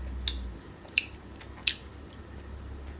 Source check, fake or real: real